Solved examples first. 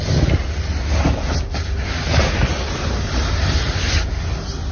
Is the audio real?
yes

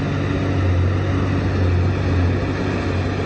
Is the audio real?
yes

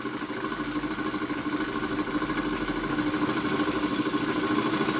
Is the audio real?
yes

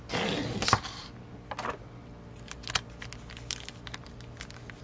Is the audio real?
yes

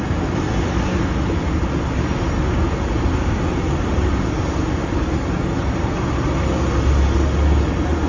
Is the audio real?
yes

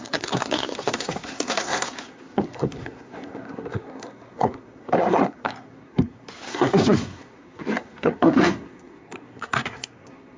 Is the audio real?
no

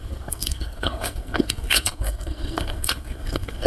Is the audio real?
no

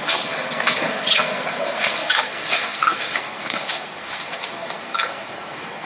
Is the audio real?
no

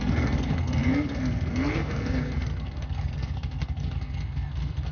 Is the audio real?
no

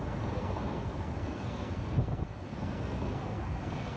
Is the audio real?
no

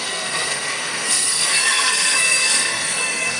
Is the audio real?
no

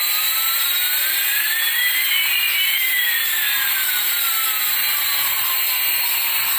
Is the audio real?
yes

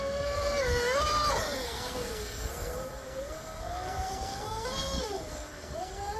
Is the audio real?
no